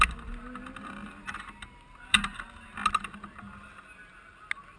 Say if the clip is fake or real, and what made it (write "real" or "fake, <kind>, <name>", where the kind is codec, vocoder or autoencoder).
real